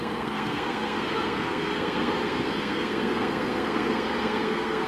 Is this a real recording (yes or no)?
no